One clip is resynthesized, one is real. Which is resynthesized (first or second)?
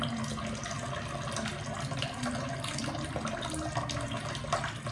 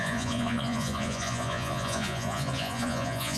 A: second